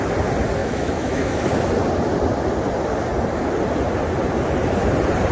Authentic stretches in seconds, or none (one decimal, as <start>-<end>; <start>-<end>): 0.0-0.6; 1.5-5.3